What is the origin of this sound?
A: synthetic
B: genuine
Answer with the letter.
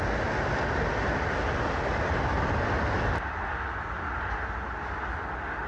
B